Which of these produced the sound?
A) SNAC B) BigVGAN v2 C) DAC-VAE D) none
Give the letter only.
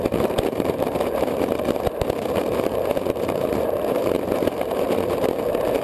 B